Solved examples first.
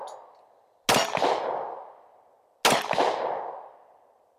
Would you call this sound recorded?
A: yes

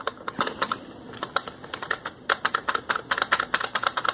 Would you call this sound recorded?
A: yes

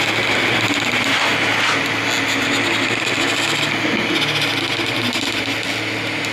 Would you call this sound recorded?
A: yes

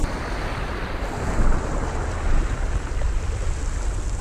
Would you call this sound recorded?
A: yes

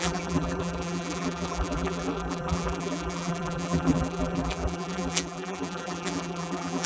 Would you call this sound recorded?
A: no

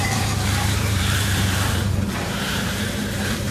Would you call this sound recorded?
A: no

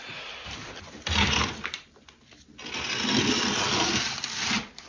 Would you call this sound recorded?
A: yes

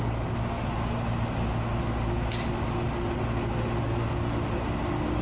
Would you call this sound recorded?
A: yes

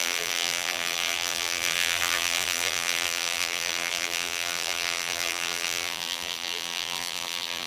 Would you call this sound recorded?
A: no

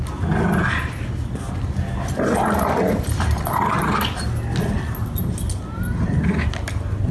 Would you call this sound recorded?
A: yes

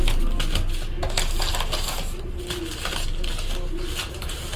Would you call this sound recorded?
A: yes